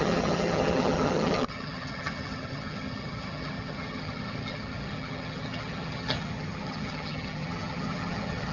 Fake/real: fake